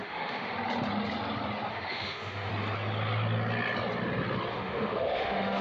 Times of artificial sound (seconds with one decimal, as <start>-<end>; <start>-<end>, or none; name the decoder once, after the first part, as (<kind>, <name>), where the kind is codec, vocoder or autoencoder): 0.0-0.5 (autoencoder, DAC-VAE); 1.7-2.5; 4.5-5.6